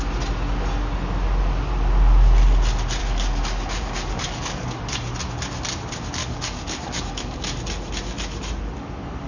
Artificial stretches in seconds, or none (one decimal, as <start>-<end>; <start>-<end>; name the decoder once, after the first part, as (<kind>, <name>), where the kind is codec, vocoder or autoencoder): 3.0-4.8 (codec, DAC); 6.2-7.6